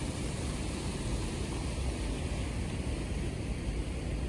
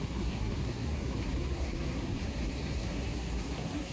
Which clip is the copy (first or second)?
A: second